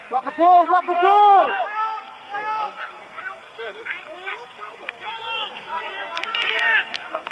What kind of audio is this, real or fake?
fake